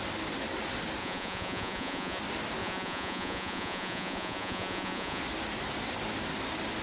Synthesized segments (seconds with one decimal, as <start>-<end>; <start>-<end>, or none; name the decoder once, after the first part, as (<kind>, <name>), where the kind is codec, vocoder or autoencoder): 1.0-2.2 (vocoder, Vocos); 2.6-5.2